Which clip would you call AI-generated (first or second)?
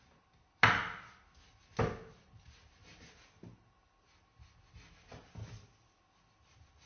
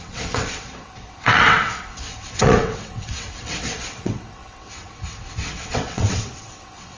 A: second